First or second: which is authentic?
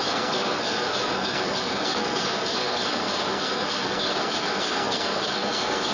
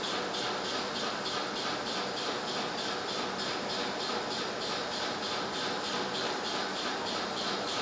second